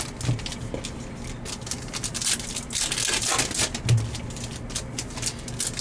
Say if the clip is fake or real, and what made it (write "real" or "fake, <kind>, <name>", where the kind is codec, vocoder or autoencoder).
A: real